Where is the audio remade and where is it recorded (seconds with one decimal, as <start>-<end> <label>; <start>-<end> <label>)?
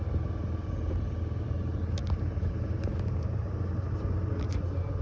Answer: 0.0-2.0 recorded; 2.0-3.6 remade; 3.6-5.0 recorded